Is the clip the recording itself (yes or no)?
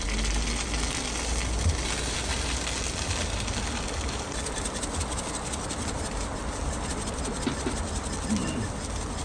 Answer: yes